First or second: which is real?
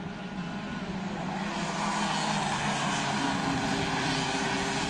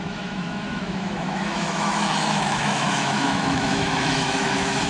first